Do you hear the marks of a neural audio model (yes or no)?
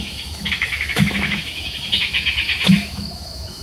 yes